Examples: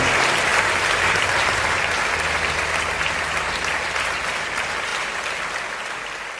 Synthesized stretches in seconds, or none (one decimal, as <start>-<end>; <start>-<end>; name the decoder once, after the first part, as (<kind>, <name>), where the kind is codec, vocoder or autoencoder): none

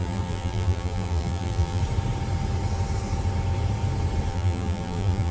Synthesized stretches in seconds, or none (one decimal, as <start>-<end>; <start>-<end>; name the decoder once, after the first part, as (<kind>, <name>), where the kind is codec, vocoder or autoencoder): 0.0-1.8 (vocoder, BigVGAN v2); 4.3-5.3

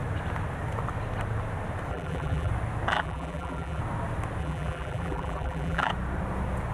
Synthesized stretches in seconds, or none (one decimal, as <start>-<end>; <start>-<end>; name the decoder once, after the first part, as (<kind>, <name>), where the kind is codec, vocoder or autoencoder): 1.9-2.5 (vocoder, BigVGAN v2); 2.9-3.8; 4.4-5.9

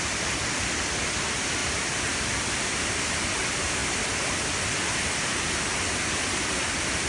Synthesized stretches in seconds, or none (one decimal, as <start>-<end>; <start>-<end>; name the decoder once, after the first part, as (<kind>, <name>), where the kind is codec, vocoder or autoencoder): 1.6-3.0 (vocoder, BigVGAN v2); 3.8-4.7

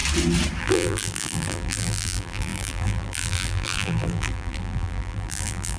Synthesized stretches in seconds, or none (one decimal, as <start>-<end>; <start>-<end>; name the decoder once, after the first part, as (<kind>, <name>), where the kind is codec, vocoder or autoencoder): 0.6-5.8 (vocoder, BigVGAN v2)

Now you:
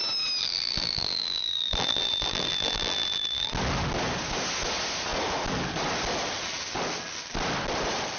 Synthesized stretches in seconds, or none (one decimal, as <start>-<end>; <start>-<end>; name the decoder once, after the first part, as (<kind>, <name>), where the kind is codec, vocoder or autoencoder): 0.4-3.5 (vocoder, BigVGAN v2)